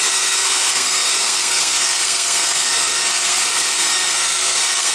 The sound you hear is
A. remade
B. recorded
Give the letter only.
A